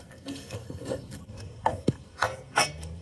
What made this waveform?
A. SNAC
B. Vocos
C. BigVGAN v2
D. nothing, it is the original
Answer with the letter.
A